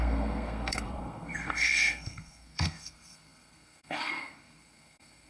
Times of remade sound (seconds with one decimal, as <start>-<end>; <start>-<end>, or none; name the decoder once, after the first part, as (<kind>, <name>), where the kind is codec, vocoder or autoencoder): 0.0-5.3 (codec, SNAC)